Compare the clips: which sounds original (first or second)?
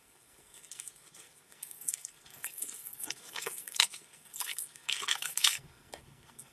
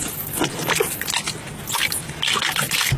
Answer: second